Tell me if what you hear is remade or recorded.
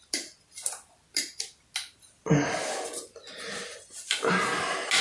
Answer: recorded